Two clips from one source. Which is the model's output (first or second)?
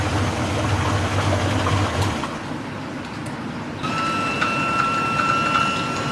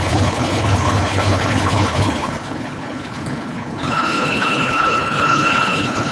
second